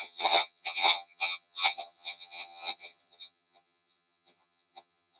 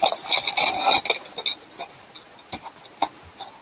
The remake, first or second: first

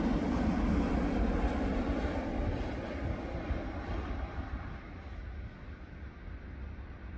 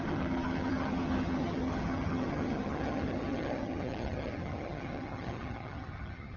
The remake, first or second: second